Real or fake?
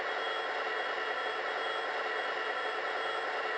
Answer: real